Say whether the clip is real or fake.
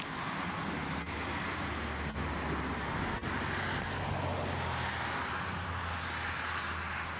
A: real